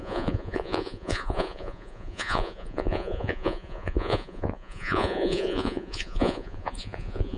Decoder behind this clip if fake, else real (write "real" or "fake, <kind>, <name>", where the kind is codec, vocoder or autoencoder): fake, vocoder, Vocos